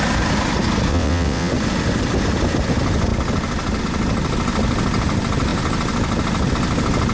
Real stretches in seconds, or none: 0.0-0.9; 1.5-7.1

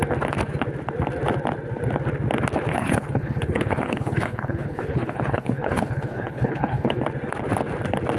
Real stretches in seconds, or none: 0.0-2.7; 7.0-8.2

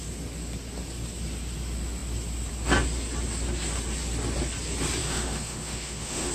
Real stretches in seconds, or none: 0.0-5.0